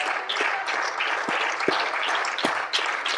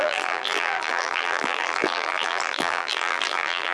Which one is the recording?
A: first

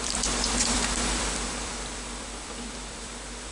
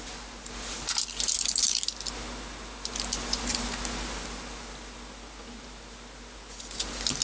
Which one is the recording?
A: second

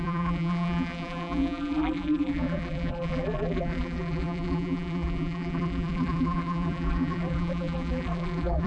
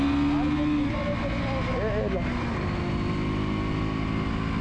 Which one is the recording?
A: second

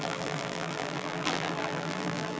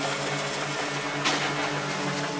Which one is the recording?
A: second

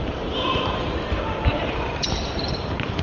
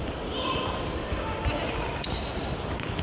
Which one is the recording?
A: second